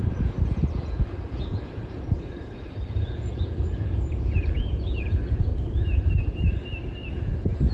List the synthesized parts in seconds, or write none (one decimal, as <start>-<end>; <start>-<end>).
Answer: 0.0-5.5; 7.1-7.7